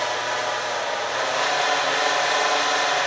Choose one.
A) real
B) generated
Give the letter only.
A